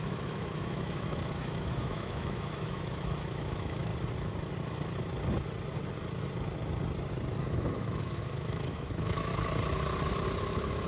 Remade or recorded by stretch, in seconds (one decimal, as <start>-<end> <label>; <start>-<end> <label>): 0.0-3.9 remade; 3.9-7.4 recorded; 7.4-9.3 remade; 9.3-10.4 recorded; 10.4-10.9 remade